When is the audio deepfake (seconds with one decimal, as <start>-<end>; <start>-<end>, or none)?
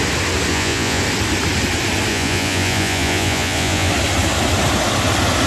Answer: 0.5-1.0; 2.1-3.9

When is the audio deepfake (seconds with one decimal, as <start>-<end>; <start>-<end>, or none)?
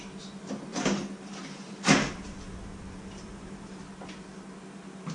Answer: 0.7-3.8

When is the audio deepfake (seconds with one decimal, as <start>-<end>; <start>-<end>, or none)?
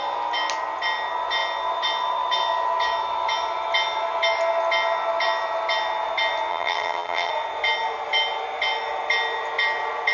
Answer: 6.5-7.3